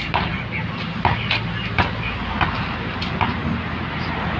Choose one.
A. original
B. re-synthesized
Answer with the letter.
A